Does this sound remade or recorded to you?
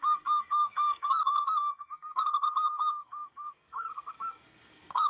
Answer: remade